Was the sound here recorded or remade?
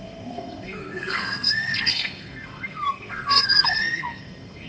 remade